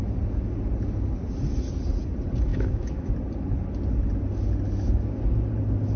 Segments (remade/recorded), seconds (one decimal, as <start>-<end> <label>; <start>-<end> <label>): 0.0-2.5 recorded; 2.5-3.1 remade; 3.1-6.0 recorded